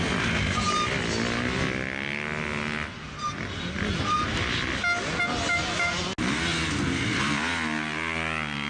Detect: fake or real real